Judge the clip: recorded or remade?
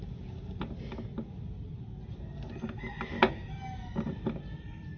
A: recorded